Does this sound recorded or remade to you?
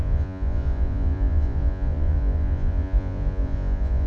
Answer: remade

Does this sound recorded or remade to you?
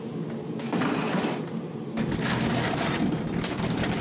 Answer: recorded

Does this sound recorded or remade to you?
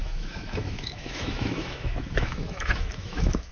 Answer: remade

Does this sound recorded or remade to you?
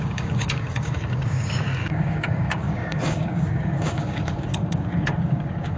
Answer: remade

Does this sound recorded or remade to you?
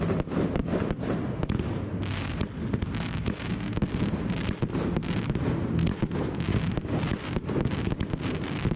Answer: recorded